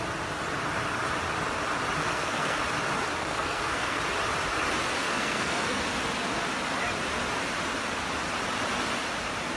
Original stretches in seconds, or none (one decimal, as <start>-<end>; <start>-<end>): 0.0-2.0; 2.6-3.2; 4.0-5.0; 5.8-9.6